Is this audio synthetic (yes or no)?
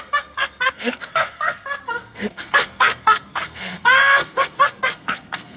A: yes